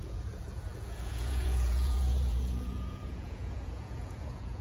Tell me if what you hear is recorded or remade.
remade